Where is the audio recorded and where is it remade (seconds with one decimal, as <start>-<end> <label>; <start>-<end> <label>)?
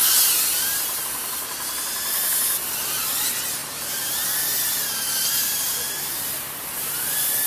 0.0-7.5 recorded